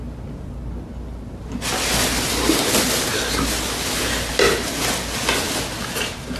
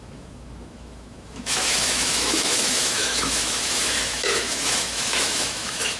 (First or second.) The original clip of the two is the first